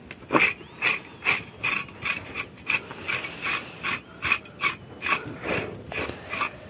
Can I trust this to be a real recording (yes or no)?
yes